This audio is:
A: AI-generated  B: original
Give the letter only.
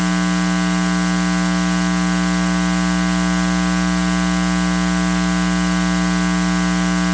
B